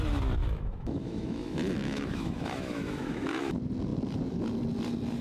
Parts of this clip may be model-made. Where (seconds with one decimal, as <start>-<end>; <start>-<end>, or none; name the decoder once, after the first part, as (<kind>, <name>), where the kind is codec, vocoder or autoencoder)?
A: 0.4-3.5 (autoencoder, DAC-VAE)